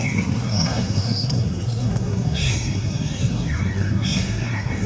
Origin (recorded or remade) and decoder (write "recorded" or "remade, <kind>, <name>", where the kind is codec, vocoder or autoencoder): remade, codec, SNAC